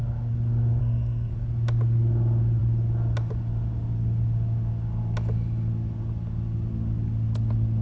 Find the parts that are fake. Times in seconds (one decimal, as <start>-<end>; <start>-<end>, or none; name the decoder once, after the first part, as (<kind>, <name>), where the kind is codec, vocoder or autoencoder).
0.8-1.3 (codec, SNAC)